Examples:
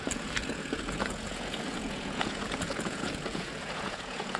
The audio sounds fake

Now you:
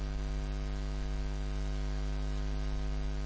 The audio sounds real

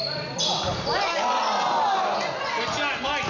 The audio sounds real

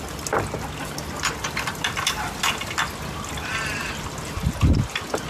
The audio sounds real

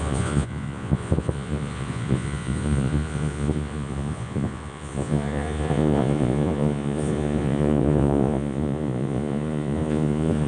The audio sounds fake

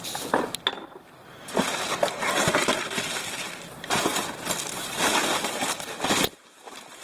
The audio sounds real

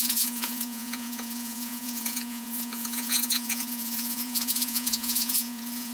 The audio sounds fake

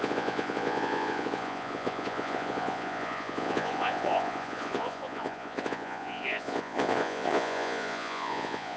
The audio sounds fake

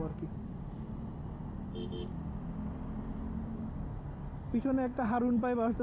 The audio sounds real